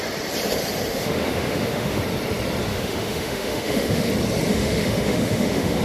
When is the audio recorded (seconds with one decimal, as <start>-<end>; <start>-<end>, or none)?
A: 0.0-0.9; 2.0-2.7; 4.1-4.5